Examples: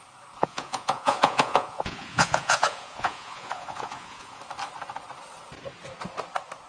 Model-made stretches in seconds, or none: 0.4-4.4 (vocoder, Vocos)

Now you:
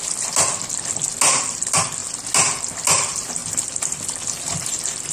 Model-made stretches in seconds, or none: none

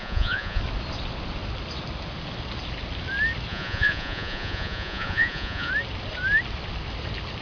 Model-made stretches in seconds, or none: 0.0-0.6 (vocoder, Vocos); 3.5-5.7